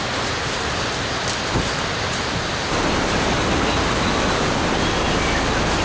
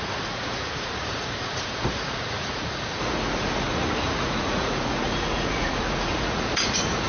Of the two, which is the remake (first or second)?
second